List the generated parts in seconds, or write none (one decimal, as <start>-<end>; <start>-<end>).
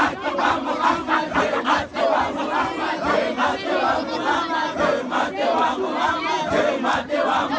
none